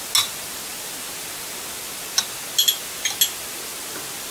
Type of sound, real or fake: real